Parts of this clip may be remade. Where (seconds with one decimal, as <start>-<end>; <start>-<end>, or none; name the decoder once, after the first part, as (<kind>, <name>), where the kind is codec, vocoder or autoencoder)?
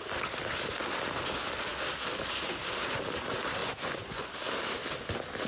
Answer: 3.6-4.3 (vocoder, Vocos)